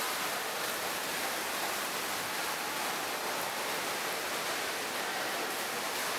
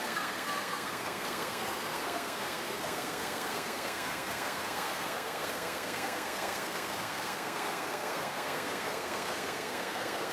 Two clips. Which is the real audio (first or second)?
first